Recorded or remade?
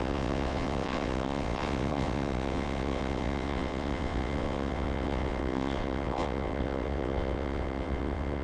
remade